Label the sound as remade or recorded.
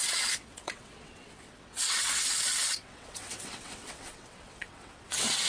remade